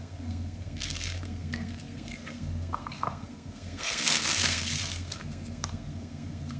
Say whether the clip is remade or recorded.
remade